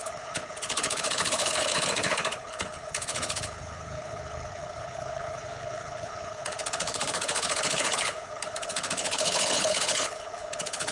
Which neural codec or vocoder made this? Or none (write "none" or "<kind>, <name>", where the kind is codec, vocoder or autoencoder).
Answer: codec, HILCodec